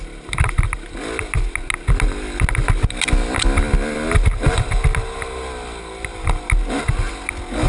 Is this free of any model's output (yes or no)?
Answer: yes